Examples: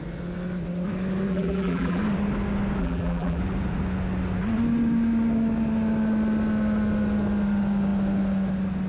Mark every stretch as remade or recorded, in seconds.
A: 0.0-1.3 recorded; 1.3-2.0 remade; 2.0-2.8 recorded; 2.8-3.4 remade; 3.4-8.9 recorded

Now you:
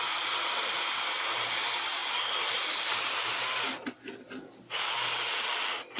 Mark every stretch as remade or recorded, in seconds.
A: 0.0-2.0 recorded; 2.0-2.9 remade; 2.9-6.0 recorded

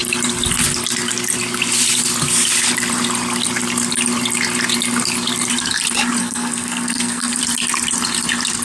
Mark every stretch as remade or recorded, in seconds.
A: 0.0-6.2 recorded; 6.2-7.4 remade; 7.4-8.6 recorded

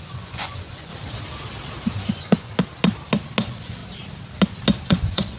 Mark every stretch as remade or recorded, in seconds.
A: 0.0-0.9 remade; 0.9-2.1 recorded; 2.1-2.5 remade; 2.5-3.4 recorded; 3.4-3.8 remade; 3.8-4.8 recorded; 4.8-5.4 remade

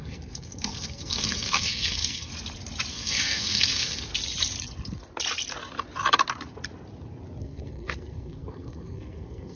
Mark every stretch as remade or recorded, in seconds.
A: 0.0-2.3 remade; 2.3-2.9 recorded; 2.9-4.1 remade; 4.1-7.4 recorded; 7.4-9.6 remade

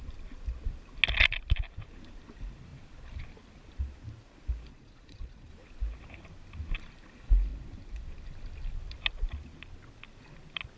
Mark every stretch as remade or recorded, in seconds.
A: 0.0-4.7 recorded; 4.7-5.5 remade; 5.5-10.8 recorded

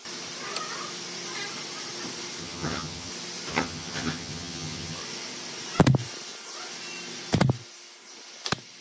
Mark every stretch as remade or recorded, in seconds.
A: 0.0-2.4 recorded; 2.4-3.1 remade; 3.1-3.5 recorded; 3.5-5.0 remade; 5.0-8.8 recorded